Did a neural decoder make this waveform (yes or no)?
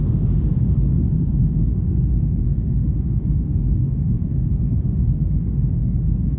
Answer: yes